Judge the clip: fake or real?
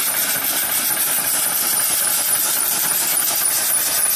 real